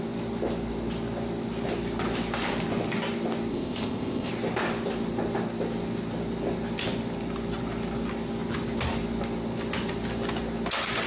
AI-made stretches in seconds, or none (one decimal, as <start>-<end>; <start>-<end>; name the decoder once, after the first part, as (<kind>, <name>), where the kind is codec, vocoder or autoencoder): 3.5-4.3 (codec, ZipCodec)